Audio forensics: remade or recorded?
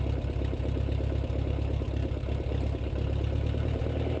recorded